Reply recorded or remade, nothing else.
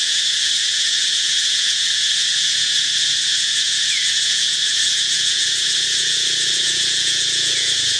remade